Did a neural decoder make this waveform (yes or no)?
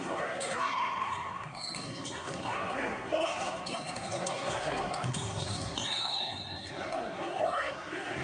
yes